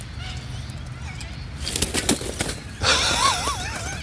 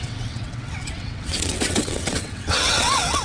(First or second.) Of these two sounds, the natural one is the first